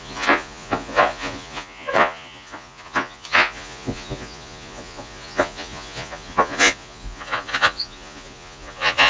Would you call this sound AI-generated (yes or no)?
yes